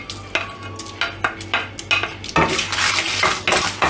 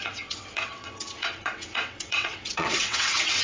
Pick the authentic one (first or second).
first